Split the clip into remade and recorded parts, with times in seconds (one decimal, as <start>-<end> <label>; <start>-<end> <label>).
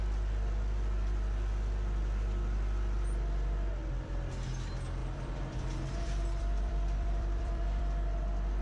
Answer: 0.0-5.0 recorded; 5.0-7.8 remade; 7.8-8.6 recorded